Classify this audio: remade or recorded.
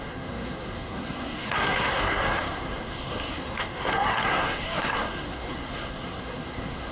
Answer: remade